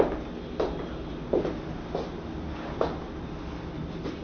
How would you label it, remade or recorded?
recorded